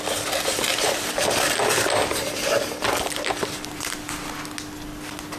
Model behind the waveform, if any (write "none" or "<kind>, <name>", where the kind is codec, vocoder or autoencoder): none